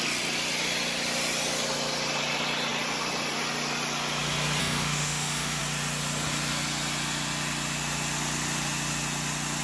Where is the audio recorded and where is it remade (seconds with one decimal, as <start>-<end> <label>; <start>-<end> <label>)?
0.0-4.6 recorded; 4.6-5.6 remade; 5.6-9.6 recorded